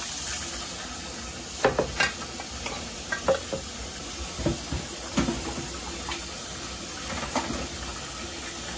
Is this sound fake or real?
real